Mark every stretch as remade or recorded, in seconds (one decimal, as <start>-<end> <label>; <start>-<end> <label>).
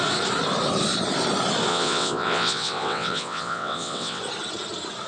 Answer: 0.0-1.7 recorded; 1.7-4.2 remade; 4.2-5.1 recorded